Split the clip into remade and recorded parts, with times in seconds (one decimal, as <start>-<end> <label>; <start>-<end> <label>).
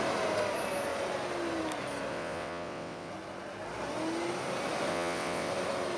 0.0-2.1 recorded; 2.1-3.1 remade; 3.1-4.9 recorded; 4.9-5.5 remade; 5.5-6.0 recorded